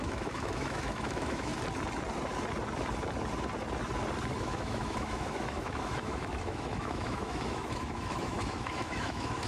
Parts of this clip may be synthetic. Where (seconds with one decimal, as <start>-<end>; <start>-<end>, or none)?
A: 0.0-1.5; 4.4-9.5